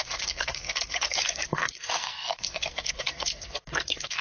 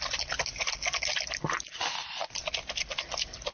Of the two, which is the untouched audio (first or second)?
second